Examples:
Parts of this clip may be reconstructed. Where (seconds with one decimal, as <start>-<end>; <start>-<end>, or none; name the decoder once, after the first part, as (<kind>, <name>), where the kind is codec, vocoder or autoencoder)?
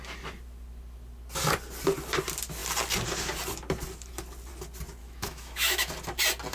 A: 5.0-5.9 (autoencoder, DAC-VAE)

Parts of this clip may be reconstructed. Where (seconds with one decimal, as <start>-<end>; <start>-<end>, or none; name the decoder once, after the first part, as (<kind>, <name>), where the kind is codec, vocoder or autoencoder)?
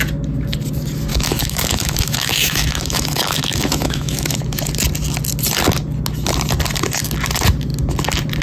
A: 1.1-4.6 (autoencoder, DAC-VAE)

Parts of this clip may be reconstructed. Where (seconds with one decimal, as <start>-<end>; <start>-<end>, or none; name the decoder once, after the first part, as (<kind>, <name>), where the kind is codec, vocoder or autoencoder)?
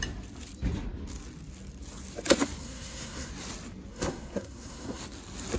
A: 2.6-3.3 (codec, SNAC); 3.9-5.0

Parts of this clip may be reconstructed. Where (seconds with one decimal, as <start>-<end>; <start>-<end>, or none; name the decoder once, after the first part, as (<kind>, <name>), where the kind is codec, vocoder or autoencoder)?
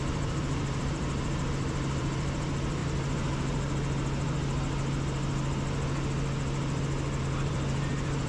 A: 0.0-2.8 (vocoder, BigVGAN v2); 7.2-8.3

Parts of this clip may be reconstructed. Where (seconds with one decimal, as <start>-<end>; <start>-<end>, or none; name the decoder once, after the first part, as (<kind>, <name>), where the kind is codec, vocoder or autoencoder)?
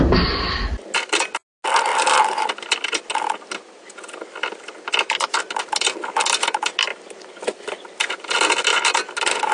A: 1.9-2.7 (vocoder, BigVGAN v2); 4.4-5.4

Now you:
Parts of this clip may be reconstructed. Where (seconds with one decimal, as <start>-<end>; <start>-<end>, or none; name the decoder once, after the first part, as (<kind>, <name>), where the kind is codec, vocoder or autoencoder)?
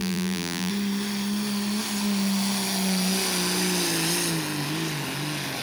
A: 0.0-0.7 (vocoder, BigVGAN v2)